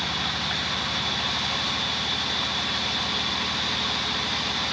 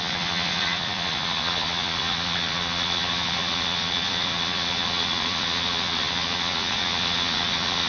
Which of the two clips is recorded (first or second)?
first